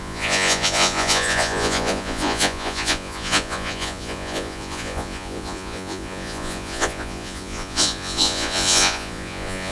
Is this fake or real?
fake